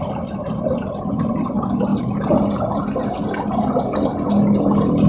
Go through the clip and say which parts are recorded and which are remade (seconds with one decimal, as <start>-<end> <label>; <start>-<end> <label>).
0.0-5.1 recorded